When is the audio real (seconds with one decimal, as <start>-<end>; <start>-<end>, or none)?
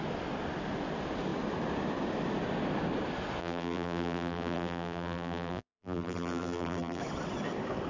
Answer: 0.0-3.4; 7.0-7.9